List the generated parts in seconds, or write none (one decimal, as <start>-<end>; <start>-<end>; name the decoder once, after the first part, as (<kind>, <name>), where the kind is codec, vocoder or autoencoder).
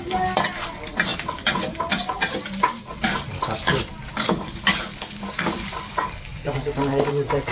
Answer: 3.3-7.1 (codec, DAC)